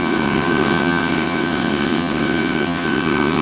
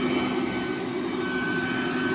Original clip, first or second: second